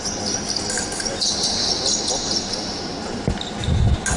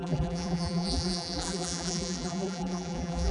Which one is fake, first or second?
second